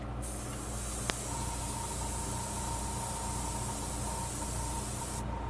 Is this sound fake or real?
real